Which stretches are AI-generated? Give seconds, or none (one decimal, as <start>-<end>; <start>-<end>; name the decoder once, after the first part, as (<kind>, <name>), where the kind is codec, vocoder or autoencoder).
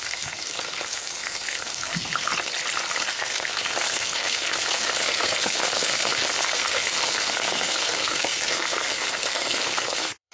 0.0-2.3 (codec, SNAC); 3.0-10.3